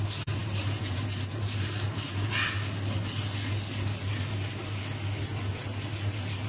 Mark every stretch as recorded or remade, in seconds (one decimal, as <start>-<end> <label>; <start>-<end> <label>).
0.0-0.4 recorded; 0.4-2.3 remade; 2.3-6.5 recorded